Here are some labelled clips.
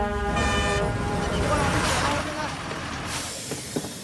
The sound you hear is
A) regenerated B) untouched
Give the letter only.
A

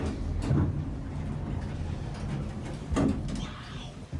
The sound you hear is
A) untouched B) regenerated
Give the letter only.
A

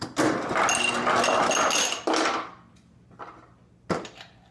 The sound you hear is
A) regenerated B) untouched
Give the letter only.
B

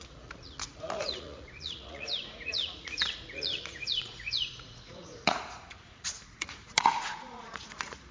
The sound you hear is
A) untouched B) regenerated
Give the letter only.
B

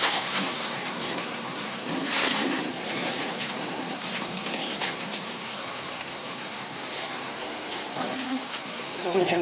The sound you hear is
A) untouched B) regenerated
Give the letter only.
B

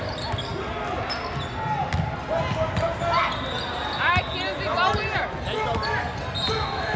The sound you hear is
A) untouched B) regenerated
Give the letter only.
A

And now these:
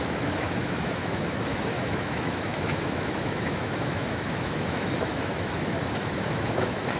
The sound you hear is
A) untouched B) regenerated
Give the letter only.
B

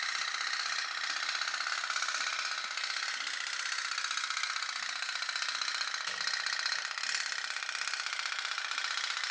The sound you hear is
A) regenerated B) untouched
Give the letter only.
B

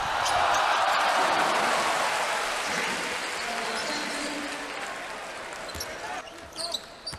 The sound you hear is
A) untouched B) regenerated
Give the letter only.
A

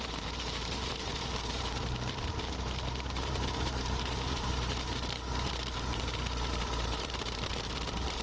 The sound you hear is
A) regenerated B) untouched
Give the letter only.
A